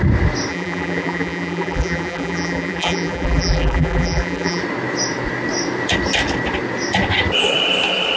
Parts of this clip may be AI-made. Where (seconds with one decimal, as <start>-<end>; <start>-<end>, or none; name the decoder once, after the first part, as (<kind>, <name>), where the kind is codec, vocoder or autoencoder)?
0.5-4.6 (vocoder, BigVGAN v2)